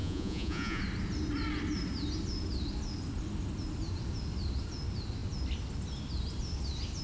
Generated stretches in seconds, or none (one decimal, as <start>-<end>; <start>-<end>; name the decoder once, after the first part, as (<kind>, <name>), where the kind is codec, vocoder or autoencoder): 0.0-0.8 (vocoder, Vocos)